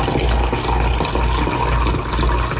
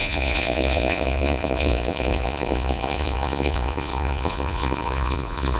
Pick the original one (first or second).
first